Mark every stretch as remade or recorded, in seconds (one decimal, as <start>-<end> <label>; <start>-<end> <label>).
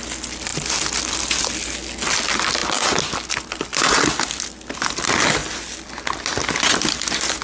0.0-7.4 recorded